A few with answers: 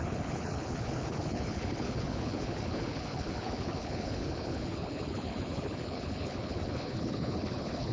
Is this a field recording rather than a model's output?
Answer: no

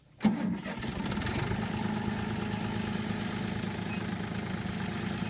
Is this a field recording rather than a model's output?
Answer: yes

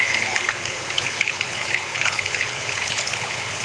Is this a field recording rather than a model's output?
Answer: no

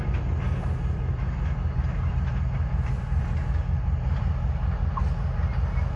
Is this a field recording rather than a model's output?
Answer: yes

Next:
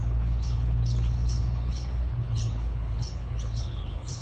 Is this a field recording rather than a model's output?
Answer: no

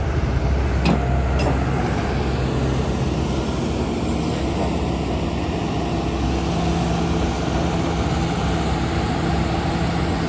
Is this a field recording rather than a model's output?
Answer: yes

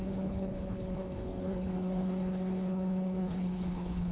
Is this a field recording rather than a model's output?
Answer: no